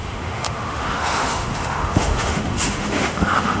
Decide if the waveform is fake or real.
fake